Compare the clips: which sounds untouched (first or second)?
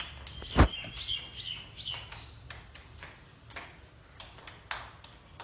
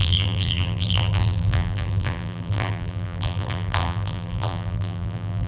first